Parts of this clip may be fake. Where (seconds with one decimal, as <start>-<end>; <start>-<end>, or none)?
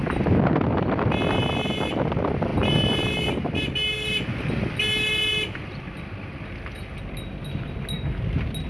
0.0-1.1